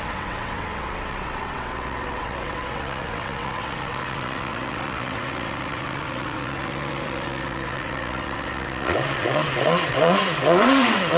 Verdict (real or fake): fake